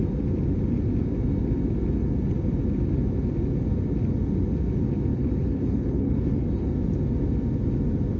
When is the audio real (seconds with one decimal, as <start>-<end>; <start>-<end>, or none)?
0.0-5.1; 6.7-8.2

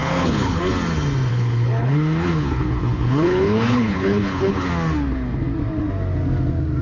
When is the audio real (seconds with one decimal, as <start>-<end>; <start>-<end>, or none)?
0.6-1.3; 4.7-6.8

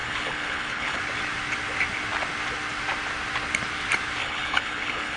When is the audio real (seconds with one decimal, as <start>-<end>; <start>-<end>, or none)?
1.0-4.2

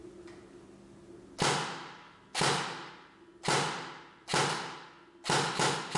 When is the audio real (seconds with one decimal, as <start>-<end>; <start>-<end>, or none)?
0.0-6.0

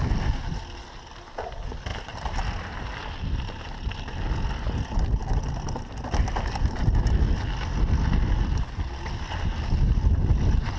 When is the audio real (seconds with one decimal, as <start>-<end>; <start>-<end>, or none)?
0.0-10.8